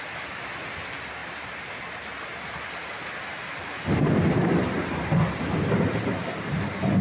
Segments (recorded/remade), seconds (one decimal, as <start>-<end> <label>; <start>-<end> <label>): 0.0-7.0 recorded